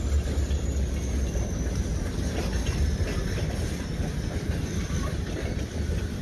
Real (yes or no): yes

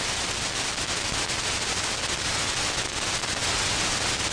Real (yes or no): yes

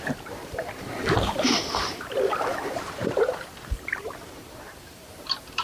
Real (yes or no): no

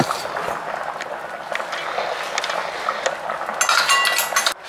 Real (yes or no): yes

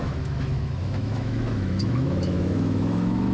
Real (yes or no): no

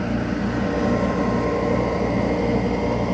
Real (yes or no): yes